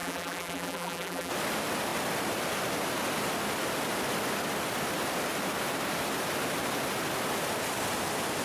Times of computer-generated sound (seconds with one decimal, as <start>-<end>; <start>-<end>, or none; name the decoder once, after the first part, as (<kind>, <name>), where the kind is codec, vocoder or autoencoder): 0.0-1.3 (vocoder, BigVGAN v2)